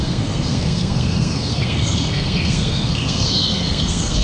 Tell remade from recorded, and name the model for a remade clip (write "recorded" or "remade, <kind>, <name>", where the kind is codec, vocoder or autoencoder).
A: remade, codec, SNAC